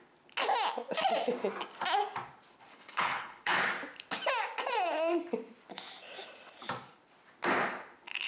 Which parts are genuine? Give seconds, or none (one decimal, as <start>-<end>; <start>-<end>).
0.0-2.7; 3.6-8.3